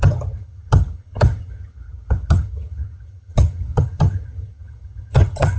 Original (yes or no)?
no